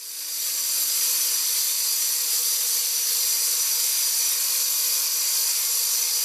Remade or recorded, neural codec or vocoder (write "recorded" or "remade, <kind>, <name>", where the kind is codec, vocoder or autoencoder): recorded